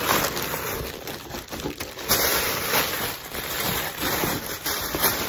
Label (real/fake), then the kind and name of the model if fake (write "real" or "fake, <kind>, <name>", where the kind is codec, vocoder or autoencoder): fake, vocoder, BigVGAN v2